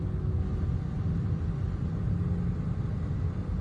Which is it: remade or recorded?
recorded